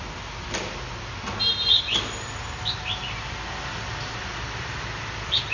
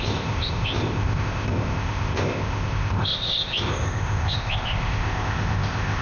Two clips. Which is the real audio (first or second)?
first